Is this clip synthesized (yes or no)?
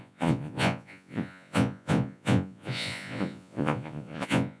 yes